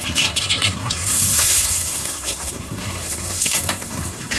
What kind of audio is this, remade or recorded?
remade